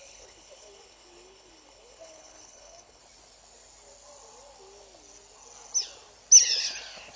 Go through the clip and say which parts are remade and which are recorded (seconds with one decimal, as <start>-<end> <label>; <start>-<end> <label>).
0.0-3.0 remade; 3.0-7.2 recorded